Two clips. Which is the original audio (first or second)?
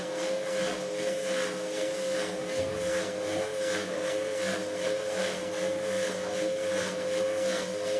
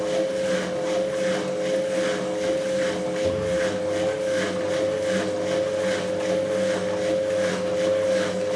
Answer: second